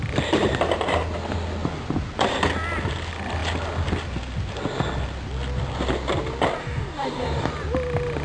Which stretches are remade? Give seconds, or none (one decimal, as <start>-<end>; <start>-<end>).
6.6-7.5